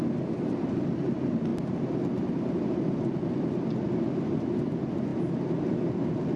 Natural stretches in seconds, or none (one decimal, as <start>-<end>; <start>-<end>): 0.0-1.5; 4.6-6.4